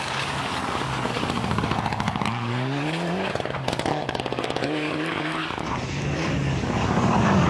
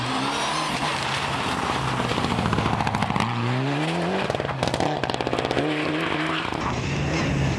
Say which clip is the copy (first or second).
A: first